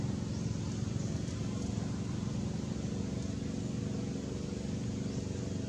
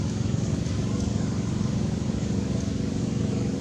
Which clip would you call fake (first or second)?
second